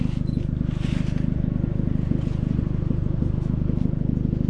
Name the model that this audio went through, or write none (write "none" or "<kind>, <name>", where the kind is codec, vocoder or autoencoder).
none